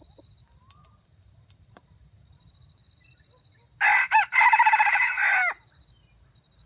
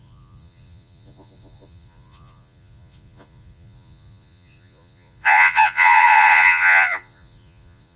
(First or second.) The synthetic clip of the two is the second